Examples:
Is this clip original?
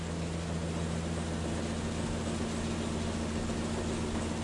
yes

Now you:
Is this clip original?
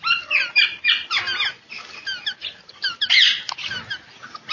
yes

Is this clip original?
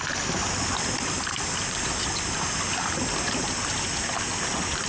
yes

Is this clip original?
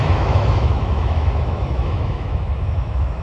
no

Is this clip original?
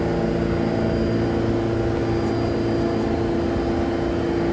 yes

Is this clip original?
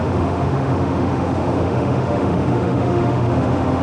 no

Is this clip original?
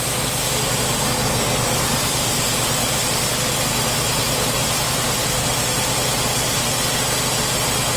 yes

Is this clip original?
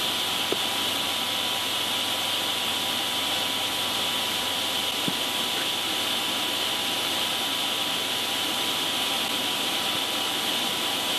yes